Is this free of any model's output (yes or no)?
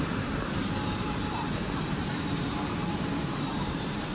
no